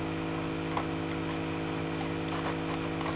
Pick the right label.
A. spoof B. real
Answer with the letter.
B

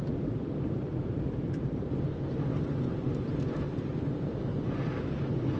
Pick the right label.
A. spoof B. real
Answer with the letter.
B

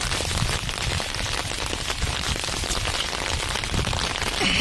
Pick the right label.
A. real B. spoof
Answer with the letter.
A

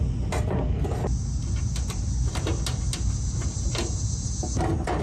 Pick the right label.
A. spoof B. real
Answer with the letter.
B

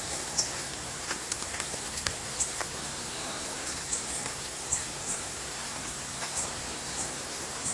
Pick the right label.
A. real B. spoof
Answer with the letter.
B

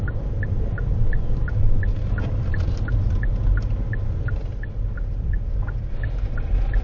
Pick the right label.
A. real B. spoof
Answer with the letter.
A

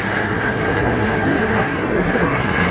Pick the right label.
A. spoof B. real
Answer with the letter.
A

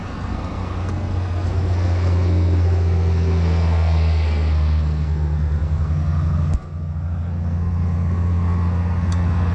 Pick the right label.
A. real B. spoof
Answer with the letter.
B